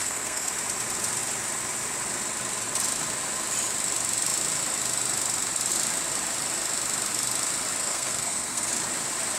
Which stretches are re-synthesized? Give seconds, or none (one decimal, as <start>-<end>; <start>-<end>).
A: 0.0-0.5; 7.8-8.7